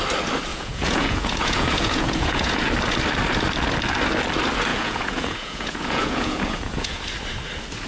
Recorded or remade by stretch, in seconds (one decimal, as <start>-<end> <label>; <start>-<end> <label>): 0.0-0.5 recorded; 0.5-2.7 remade; 2.7-4.7 recorded; 4.7-7.0 remade; 7.0-7.9 recorded